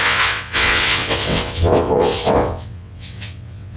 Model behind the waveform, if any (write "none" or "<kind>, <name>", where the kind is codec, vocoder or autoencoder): vocoder, WaveNeXt